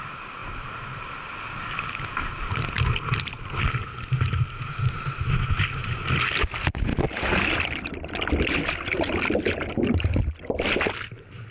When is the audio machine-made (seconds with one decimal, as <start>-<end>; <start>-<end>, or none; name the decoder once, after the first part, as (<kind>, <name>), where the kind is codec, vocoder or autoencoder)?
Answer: none